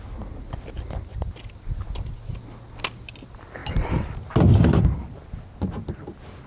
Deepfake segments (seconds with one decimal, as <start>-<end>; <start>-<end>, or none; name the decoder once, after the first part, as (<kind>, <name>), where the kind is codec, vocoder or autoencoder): none